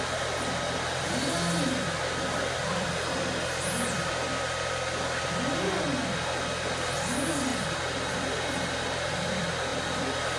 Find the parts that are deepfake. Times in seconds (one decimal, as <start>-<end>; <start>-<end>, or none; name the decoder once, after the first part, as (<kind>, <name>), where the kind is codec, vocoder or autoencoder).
none